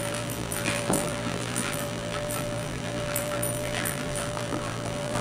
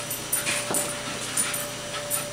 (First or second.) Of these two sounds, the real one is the second